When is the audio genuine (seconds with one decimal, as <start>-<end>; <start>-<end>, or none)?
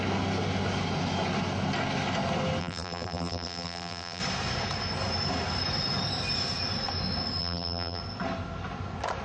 0.0-2.6; 4.2-7.4; 8.0-9.2